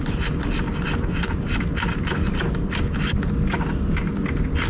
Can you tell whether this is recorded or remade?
recorded